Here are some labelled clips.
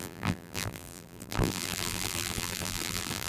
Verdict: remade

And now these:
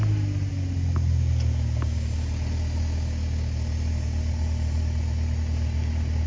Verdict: recorded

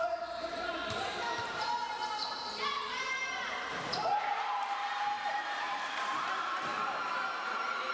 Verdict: remade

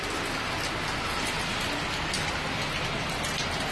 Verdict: recorded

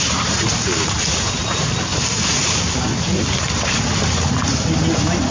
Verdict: recorded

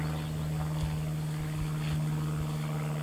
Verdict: recorded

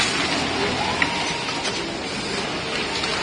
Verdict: recorded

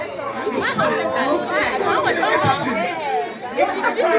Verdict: recorded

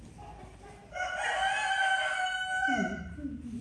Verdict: recorded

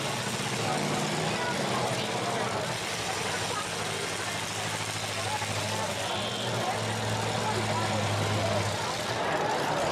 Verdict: recorded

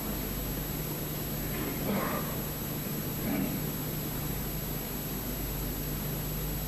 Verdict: recorded